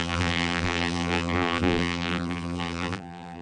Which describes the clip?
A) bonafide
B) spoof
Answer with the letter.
B